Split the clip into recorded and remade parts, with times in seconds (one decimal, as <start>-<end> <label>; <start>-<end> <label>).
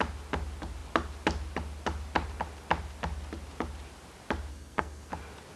0.0-4.5 recorded; 4.5-5.1 remade; 5.1-5.6 recorded